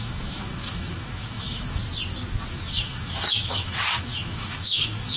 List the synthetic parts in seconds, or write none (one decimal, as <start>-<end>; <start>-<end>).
0.0-1.8; 2.5-5.2

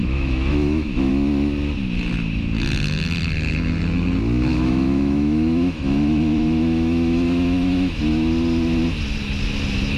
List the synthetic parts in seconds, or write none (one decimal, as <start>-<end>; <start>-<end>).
0.0-1.1; 4.5-8.0

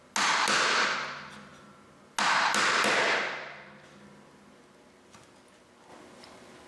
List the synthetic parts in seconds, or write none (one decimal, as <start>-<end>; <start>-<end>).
none

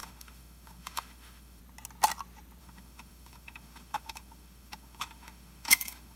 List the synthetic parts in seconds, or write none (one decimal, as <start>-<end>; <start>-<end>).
0.0-1.6; 2.6-6.2